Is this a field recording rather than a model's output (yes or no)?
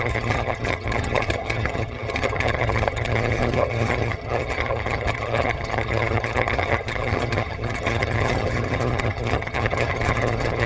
no